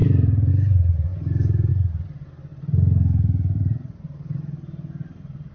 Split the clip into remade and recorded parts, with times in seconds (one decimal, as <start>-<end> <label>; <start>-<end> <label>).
0.0-2.5 recorded; 2.5-5.5 remade